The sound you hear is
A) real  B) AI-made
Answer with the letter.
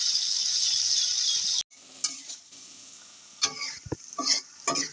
A